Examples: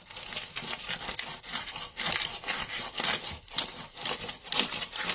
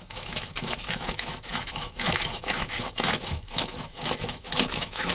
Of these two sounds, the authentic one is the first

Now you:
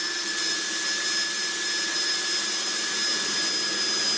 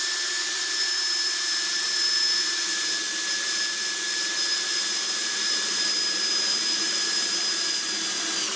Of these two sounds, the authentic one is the first